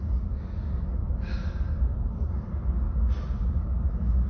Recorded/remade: recorded